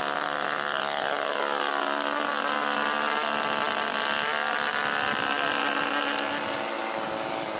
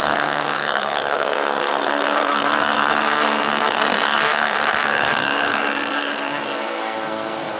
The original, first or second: first